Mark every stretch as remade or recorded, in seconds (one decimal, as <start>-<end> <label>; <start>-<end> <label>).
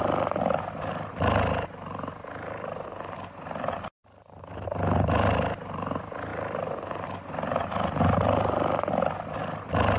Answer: 0.0-10.0 recorded